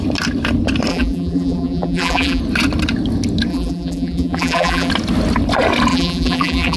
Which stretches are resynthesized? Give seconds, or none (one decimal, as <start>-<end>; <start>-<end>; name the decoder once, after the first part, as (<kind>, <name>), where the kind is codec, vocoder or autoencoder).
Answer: 0.9-2.4 (vocoder, BigVGAN v2); 3.5-4.9; 5.9-6.8